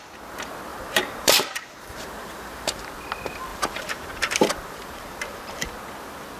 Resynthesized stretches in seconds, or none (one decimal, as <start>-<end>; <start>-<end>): 0.7-2.8; 3.5-5.7